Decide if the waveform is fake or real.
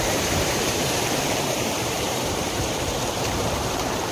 fake